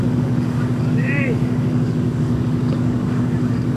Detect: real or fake fake